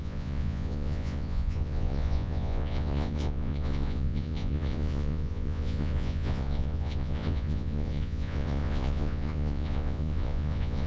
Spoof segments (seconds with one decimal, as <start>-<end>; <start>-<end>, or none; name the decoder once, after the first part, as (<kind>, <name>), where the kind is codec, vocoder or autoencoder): 0.0-10.9 (vocoder, Vocos)